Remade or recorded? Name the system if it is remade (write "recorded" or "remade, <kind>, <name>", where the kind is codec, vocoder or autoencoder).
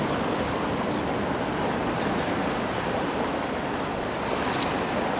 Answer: recorded